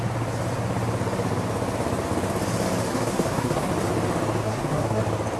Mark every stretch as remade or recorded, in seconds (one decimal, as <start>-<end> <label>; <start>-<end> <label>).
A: 0.0-2.9 recorded; 2.9-3.7 remade; 3.7-4.4 recorded; 4.4-5.0 remade; 5.0-5.4 recorded